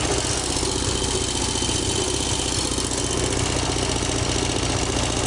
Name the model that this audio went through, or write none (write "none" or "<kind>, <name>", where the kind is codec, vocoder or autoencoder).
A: none